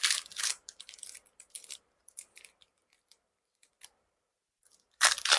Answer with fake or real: fake